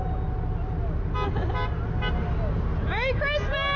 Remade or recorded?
recorded